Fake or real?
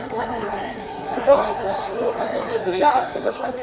fake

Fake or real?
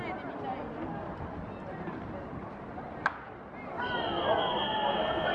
real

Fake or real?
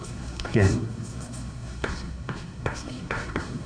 fake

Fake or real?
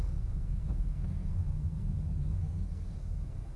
fake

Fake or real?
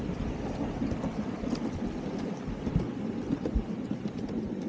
real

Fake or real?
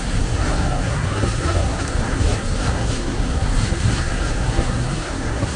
fake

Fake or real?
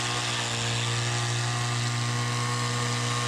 real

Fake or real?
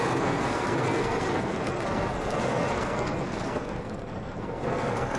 fake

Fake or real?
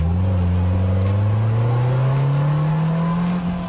real